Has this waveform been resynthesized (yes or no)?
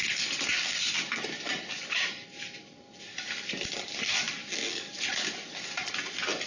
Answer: no